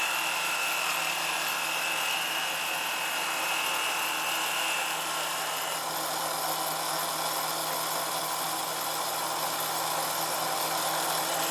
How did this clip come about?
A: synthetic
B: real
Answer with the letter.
B